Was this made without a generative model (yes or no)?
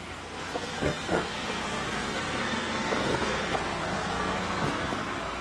no